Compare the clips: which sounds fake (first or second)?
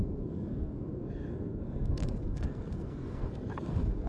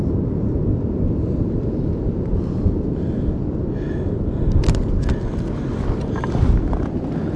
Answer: first